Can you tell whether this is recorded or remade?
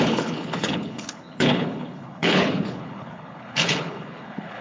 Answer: remade